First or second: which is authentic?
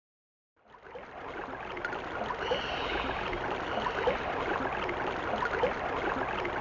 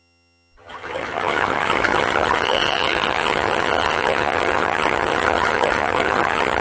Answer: first